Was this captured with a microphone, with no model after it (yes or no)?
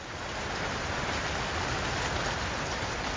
yes